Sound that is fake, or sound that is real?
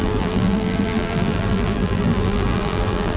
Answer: fake